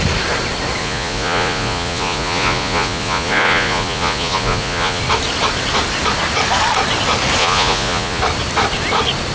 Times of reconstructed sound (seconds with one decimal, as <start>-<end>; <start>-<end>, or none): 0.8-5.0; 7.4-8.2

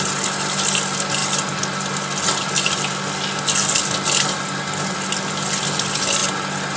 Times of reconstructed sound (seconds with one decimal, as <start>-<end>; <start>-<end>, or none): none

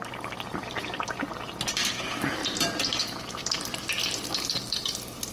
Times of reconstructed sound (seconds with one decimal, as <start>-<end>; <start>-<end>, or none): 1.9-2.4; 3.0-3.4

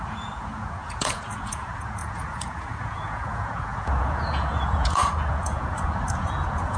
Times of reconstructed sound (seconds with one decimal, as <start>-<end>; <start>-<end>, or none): 0.0-6.8

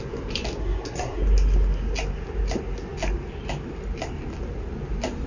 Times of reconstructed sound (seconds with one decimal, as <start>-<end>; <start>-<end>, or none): 0.6-1.2